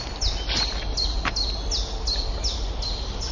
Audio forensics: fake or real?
real